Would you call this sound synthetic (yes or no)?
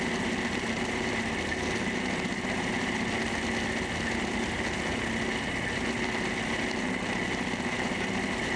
no